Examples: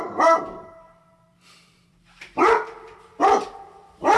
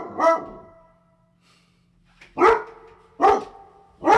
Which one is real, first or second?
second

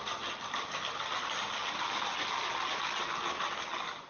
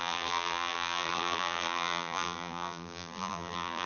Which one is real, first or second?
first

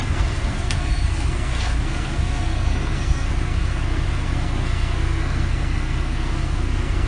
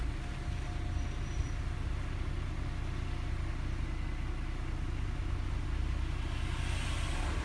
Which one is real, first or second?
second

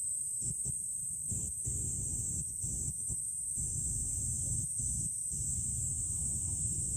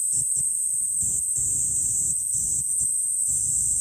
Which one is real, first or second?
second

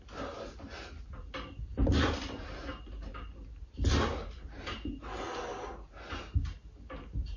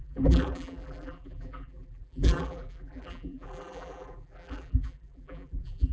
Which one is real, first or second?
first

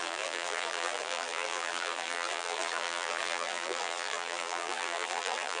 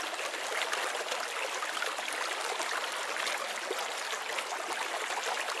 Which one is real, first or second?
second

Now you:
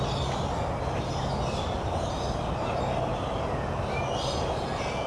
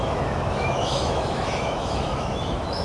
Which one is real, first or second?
first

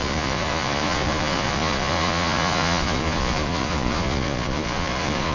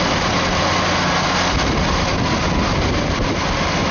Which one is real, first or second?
second